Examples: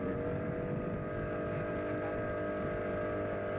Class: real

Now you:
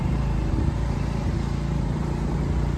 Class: fake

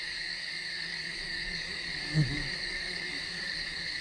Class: fake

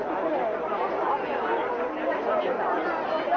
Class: real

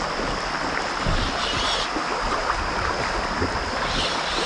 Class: real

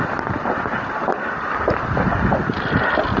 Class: real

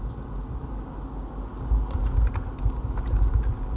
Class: real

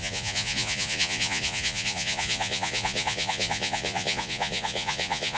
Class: fake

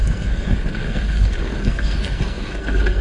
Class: fake